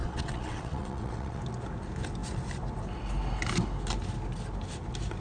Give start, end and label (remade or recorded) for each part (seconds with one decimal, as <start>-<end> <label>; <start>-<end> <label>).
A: 0.0-1.4 remade; 1.4-5.2 recorded